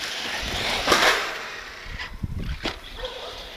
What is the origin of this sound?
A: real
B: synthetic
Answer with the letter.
B